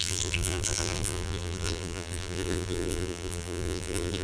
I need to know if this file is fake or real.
fake